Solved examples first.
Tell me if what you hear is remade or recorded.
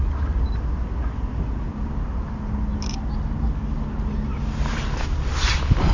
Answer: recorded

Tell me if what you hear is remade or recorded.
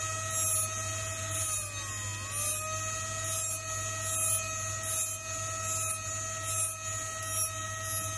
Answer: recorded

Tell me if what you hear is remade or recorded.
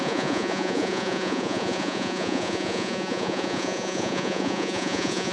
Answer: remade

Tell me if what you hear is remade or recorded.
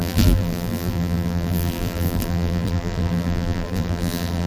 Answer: remade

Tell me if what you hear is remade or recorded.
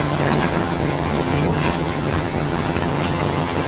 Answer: remade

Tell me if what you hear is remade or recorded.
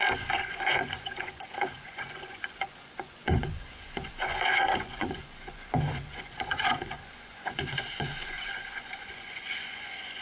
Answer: remade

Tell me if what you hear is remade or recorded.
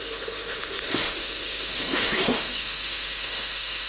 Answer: remade